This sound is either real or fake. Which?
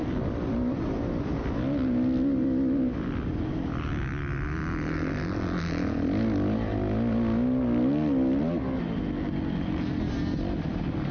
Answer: real